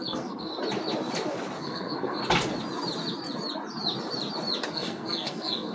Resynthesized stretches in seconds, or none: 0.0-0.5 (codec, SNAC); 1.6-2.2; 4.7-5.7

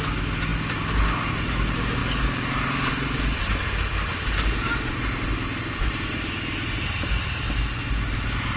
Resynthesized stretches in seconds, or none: none